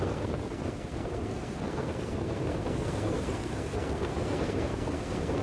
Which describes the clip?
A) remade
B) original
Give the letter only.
A